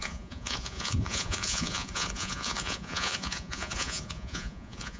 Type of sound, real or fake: fake